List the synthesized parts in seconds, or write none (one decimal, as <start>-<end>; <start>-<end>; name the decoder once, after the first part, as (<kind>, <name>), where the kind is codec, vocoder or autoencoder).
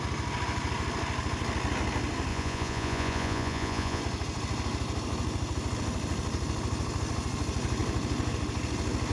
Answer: 2.3-4.0 (vocoder, Vocos)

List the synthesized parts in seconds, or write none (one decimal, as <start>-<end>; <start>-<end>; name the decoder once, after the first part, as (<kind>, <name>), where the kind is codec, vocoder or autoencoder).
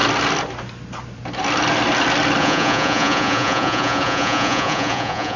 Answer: 2.4-5.4 (vocoder, Vocos)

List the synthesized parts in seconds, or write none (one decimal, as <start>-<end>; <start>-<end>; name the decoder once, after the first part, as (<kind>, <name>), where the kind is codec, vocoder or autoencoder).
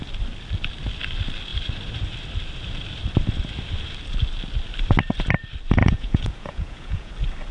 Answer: 5.8-7.1 (vocoder, Vocos)